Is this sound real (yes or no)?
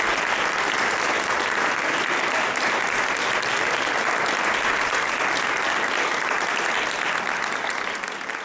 yes